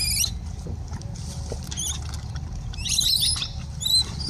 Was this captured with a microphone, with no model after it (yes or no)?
yes